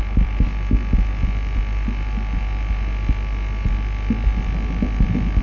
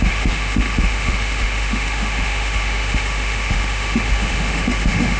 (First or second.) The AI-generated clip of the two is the second